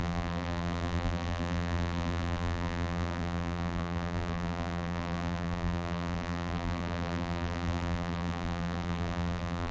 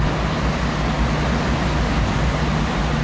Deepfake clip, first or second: first